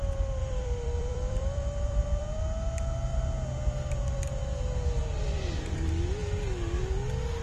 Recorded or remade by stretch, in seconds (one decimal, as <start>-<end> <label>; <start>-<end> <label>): 0.0-0.4 recorded; 0.4-2.4 remade; 2.4-7.4 recorded